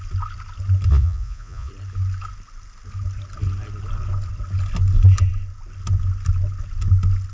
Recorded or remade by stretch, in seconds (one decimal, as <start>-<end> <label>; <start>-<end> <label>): 0.0-0.9 recorded; 0.9-1.7 remade; 1.7-7.3 recorded